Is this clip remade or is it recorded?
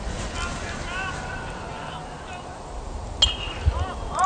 recorded